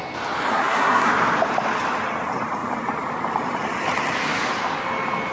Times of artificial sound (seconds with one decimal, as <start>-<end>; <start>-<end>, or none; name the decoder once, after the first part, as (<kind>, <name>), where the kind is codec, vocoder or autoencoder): 0.5-1.1 (codec, SNAC)